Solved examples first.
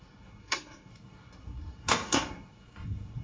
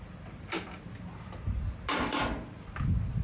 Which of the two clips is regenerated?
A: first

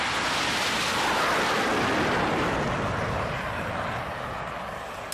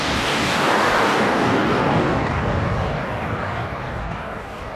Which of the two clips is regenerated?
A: second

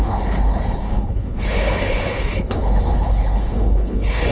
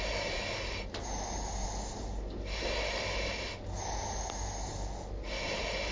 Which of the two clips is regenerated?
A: first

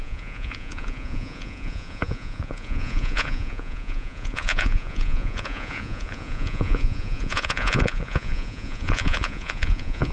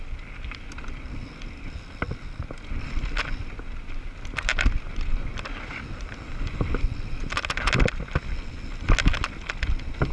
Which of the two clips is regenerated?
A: first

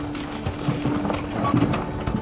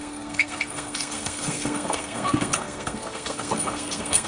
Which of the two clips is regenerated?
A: second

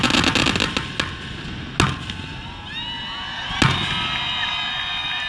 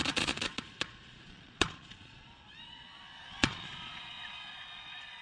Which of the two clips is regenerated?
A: second